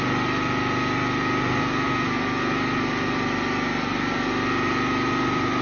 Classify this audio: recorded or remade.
recorded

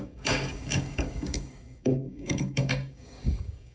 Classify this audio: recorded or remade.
remade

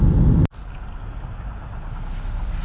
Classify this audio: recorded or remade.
recorded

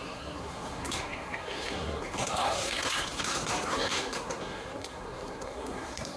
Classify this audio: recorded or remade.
remade